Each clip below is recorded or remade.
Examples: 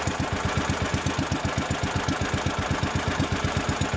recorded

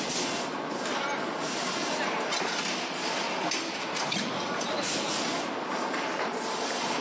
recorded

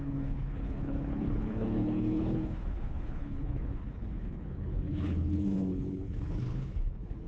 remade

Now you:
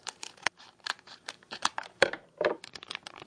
remade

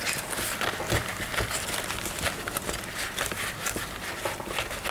recorded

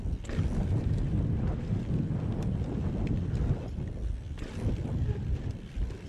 recorded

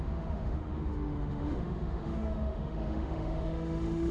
remade